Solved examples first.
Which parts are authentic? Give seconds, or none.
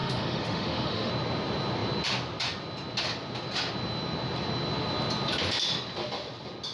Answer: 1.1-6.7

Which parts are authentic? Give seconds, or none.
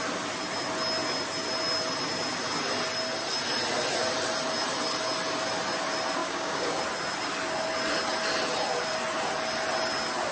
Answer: 0.0-6.2; 6.8-10.3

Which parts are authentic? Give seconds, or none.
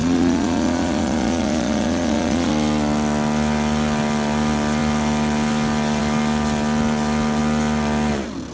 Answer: 2.5-8.5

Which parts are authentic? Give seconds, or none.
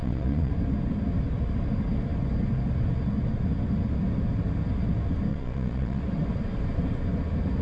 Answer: 0.5-5.3; 6.0-7.6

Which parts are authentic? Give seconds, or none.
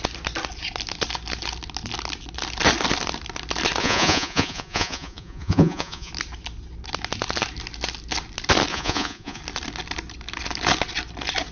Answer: 0.0-3.8; 6.1-8.7; 9.4-11.5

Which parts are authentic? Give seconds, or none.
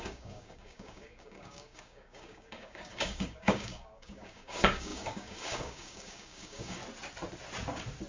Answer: 6.8-8.1